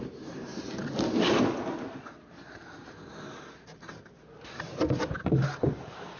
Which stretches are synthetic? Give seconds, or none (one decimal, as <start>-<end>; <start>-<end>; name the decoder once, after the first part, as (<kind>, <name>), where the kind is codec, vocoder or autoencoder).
0.0-0.5 (vocoder, BigVGAN v2); 2.8-6.2